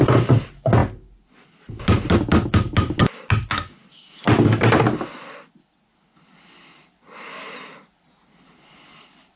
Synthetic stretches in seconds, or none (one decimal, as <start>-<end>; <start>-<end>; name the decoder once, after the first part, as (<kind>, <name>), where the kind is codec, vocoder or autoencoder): none